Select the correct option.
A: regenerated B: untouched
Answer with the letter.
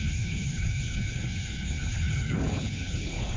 A